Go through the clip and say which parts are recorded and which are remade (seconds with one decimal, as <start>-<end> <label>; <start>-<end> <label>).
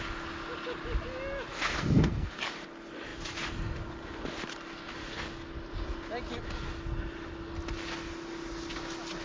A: 0.0-1.5 recorded; 1.5-2.3 remade; 2.3-9.2 recorded